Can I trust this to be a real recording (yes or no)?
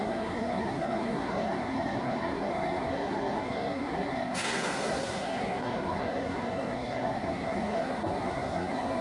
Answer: no